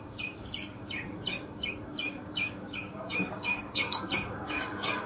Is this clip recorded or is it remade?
remade